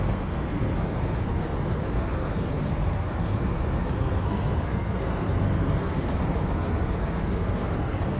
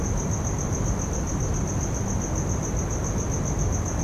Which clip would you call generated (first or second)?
first